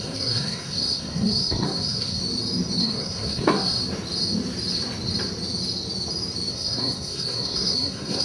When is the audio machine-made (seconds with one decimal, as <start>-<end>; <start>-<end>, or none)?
0.0-2.2; 2.8-3.8; 6.5-8.2